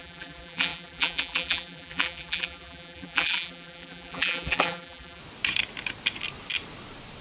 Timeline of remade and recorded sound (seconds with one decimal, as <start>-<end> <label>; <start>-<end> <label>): 0.0-5.2 remade; 5.2-7.2 recorded